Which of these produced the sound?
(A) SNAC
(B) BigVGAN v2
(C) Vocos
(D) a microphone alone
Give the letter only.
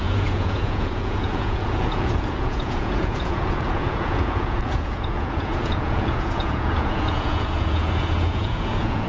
C